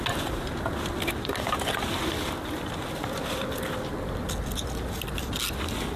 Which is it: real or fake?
real